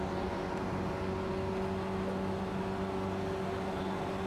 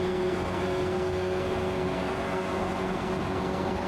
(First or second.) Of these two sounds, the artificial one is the second